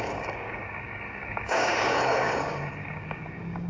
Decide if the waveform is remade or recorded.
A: remade